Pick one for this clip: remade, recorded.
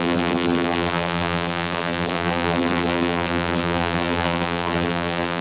remade